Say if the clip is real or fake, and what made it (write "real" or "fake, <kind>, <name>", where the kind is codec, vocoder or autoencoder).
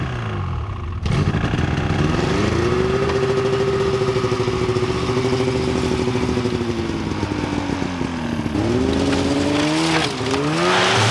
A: real